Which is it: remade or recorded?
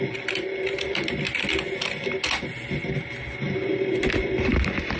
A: recorded